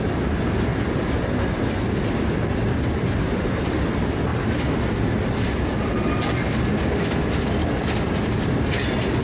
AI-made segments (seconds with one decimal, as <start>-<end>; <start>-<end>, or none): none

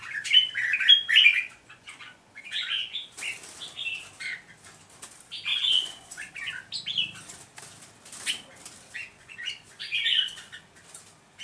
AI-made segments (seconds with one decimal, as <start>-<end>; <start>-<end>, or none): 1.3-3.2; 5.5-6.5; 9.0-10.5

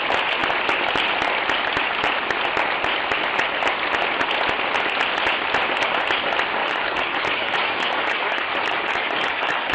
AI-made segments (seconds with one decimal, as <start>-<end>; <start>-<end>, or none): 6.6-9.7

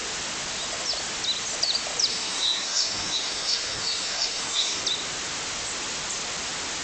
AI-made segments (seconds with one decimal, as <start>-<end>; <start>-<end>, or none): 2.1-4.8

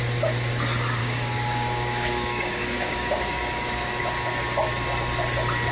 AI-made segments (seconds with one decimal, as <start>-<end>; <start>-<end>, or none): 1.0-3.4